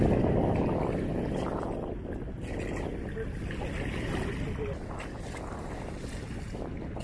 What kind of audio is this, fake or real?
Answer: real